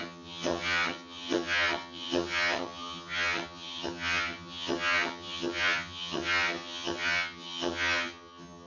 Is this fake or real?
fake